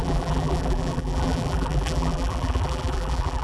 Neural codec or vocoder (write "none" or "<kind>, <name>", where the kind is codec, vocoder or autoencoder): vocoder, BigVGAN v2